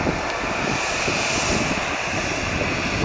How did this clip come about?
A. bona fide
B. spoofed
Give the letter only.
A